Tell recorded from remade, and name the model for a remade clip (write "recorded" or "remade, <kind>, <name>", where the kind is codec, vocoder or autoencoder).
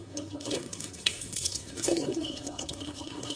remade, codec, SNAC